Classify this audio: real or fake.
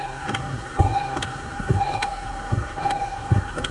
fake